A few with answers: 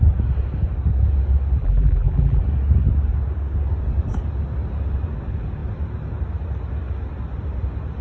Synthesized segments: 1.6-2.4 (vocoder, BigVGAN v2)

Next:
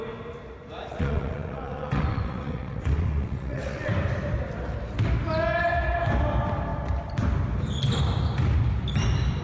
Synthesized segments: 0.9-3.9 (vocoder, WaveNeXt)